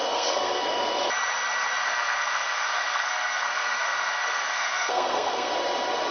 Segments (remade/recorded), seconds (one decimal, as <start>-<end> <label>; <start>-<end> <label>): 0.0-0.6 remade; 0.6-1.8 recorded; 1.8-5.5 remade; 5.5-6.1 recorded